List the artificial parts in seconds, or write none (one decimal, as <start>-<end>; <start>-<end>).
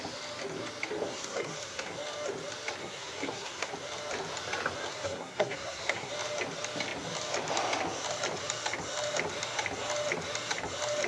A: 1.1-1.9; 2.8-3.7; 4.9-6.1